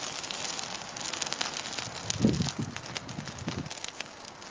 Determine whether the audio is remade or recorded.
recorded